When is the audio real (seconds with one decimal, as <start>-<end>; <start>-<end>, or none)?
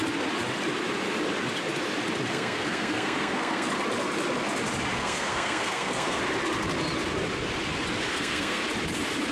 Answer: 0.0-2.3; 3.7-5.0; 6.2-8.1; 8.6-9.3